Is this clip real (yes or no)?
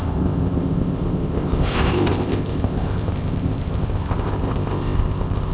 no